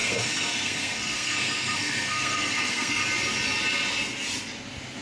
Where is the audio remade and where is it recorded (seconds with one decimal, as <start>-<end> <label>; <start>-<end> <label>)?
0.0-3.0 remade; 3.0-5.0 recorded